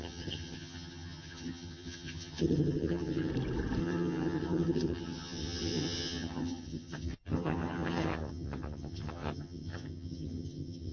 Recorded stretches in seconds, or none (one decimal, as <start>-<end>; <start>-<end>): 3.3-3.8